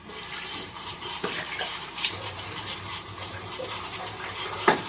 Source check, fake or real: fake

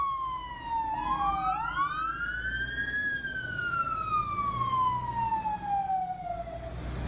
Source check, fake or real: real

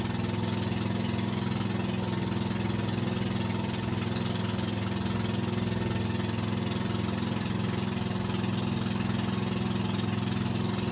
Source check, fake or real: real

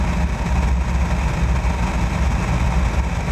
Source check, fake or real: real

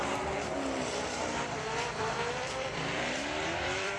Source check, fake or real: fake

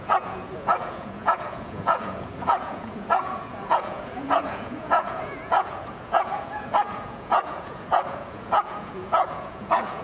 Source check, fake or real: fake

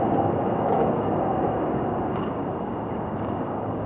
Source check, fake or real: fake